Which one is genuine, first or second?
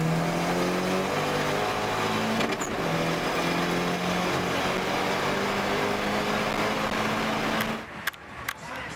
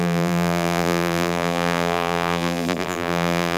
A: first